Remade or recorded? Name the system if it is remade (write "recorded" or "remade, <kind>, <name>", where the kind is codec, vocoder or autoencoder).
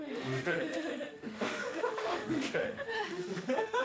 remade, autoencoder, DAC-VAE